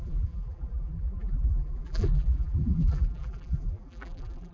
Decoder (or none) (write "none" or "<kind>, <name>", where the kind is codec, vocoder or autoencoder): vocoder, BigVGAN v2